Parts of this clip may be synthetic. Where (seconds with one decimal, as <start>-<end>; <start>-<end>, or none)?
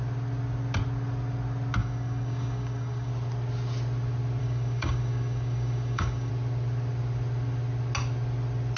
1.8-3.1; 4.4-6.3